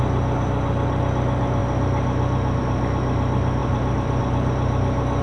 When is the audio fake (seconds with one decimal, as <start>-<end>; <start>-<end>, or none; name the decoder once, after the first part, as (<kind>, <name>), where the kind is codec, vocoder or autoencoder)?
3.6-4.2 (vocoder, BigVGAN v2)